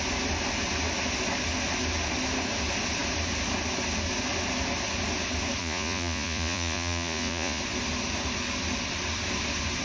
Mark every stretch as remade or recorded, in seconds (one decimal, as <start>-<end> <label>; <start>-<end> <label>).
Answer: 0.0-5.6 recorded; 5.6-7.6 remade; 7.6-9.8 recorded